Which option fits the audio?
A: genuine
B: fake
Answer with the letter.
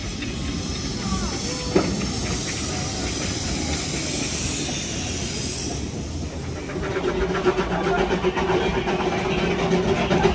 A